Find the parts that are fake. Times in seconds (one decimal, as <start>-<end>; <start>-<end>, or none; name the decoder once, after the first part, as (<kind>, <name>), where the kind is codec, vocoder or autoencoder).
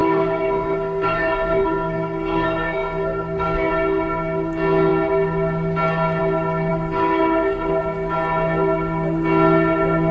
0.0-3.7 (codec, SNAC); 6.7-7.8